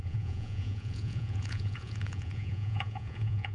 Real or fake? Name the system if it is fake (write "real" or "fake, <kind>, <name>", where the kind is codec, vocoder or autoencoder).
fake, vocoder, Vocos